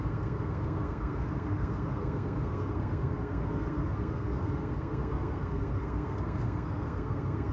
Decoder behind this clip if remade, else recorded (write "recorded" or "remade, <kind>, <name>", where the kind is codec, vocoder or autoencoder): remade, codec, SNAC